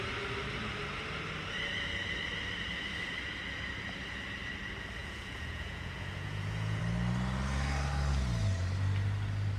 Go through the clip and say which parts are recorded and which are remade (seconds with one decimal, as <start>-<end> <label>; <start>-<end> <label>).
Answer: 0.0-5.0 recorded; 5.0-6.8 remade; 6.8-9.6 recorded